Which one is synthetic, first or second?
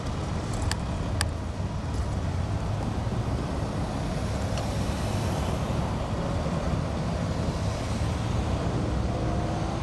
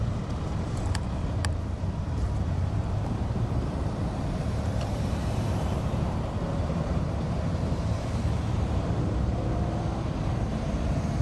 second